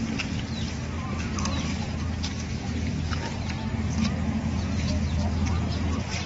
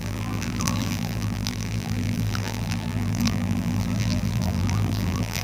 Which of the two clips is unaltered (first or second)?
first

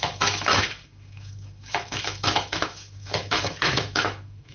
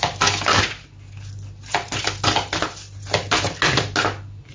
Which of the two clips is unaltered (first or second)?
second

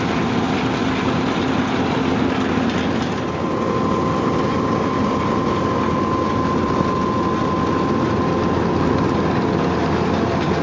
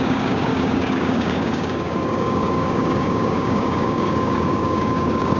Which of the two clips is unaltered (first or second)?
first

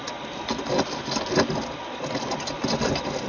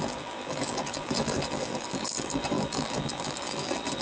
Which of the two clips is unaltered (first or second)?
first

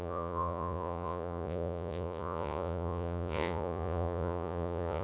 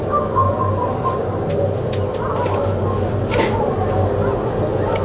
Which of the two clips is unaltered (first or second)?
second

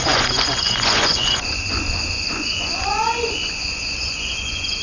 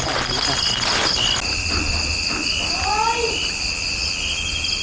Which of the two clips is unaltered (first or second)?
second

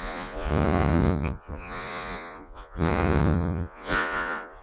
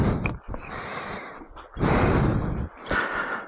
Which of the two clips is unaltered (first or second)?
second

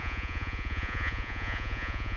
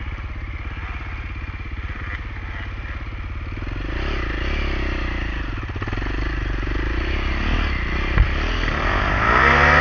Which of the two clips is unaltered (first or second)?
second